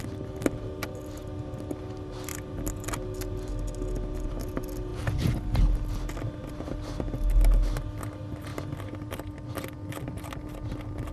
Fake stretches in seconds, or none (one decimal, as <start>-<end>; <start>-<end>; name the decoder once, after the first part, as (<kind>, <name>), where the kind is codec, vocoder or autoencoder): none